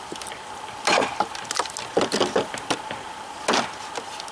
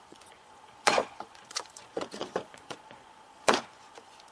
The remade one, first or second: second